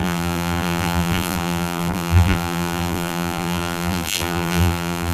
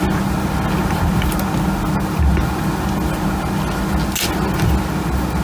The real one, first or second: second